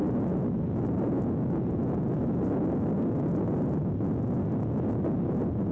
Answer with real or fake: real